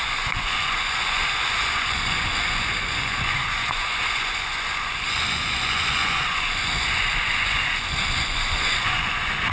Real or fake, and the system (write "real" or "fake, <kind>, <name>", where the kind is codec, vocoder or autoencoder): fake, vocoder, Vocos